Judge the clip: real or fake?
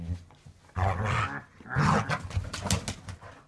real